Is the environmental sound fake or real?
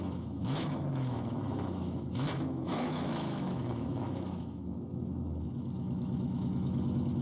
fake